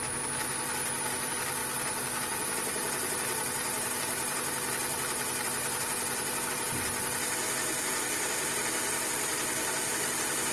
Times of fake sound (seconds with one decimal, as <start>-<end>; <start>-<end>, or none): none